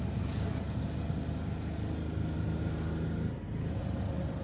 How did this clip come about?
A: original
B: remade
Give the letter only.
A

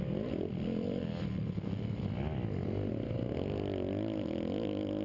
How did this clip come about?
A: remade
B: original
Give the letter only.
B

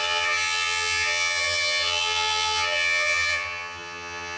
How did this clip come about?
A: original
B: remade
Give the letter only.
B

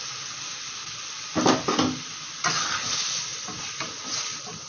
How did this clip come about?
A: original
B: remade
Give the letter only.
A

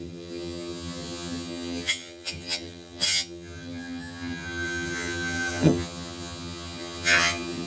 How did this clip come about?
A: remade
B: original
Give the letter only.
A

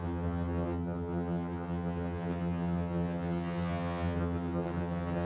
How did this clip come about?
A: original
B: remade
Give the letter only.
B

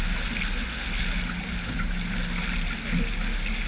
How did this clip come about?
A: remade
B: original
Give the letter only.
B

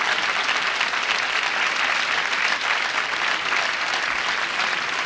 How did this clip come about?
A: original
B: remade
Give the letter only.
A